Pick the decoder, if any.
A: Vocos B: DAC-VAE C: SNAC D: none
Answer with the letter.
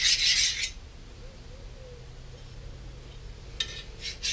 D